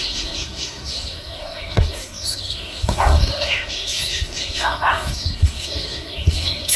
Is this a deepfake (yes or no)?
yes